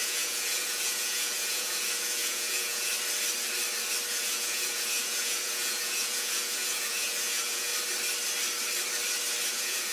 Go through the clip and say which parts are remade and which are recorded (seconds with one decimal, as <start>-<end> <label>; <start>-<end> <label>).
0.0-2.9 remade; 2.9-4.1 recorded; 4.1-7.7 remade; 7.7-9.5 recorded; 9.5-9.9 remade